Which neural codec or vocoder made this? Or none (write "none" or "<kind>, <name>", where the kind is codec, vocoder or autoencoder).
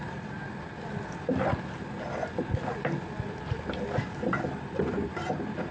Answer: none